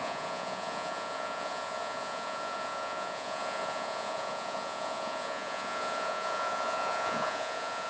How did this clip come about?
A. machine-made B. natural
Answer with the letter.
A